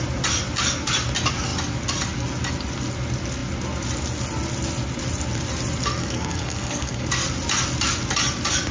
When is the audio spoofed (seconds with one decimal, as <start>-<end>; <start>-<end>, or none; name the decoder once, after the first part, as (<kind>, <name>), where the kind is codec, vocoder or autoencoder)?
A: 6.0-7.1 (codec, SNAC)